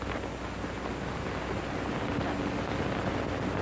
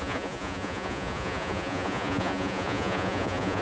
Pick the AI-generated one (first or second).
second